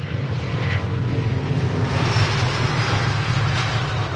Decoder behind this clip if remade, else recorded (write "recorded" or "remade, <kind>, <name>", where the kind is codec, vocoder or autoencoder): recorded